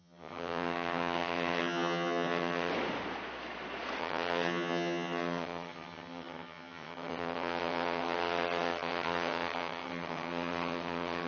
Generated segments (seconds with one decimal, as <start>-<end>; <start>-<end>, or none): 0.0-2.7; 4.0-11.3